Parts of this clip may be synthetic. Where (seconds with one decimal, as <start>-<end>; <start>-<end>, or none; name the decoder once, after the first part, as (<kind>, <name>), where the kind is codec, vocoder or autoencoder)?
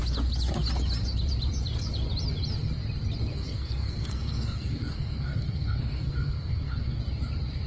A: 3.3-7.0 (codec, SNAC)